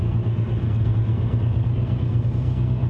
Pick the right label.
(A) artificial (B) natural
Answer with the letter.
A